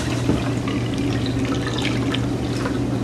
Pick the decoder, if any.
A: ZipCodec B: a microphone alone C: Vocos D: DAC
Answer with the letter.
B